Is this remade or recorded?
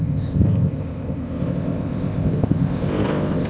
remade